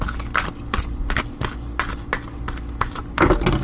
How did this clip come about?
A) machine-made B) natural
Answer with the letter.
B